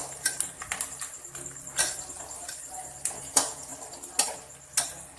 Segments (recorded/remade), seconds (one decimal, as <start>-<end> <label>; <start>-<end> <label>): 0.0-3.1 recorded; 3.1-3.7 remade; 3.7-5.2 recorded